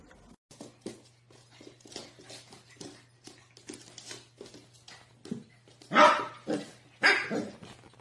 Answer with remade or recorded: recorded